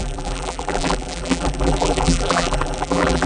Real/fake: fake